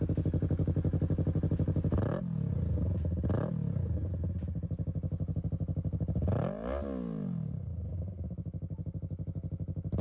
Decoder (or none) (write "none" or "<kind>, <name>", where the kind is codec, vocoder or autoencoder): none